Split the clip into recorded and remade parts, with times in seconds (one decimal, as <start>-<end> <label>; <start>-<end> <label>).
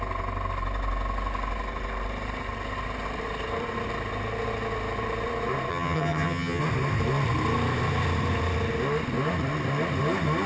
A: 0.0-5.7 recorded; 5.7-6.6 remade; 6.6-10.5 recorded